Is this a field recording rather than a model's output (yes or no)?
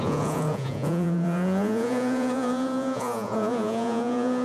no